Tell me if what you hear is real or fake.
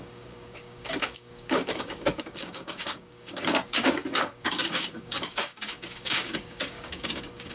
fake